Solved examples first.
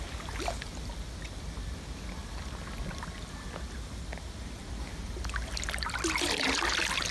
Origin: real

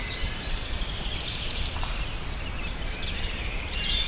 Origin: fake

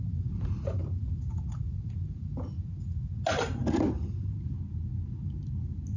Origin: real